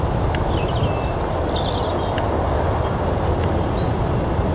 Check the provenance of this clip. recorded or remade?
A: recorded